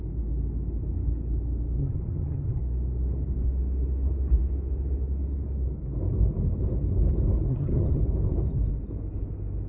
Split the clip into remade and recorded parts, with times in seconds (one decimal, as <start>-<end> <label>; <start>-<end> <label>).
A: 0.0-1.8 recorded; 1.8-2.6 remade; 2.6-7.5 recorded; 7.5-8.0 remade; 8.0-9.7 recorded